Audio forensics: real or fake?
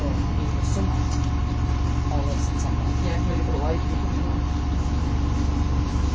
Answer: real